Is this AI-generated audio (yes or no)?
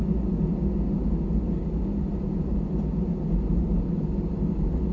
no